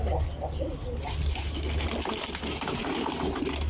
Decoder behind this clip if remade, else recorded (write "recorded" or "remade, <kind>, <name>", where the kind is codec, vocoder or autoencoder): recorded